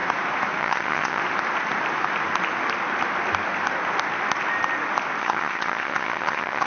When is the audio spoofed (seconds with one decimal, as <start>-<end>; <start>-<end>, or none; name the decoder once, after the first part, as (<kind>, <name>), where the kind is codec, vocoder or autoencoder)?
0.6-1.2 (vocoder, HiFi-GAN); 5.2-6.7